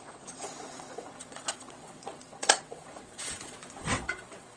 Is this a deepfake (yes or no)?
yes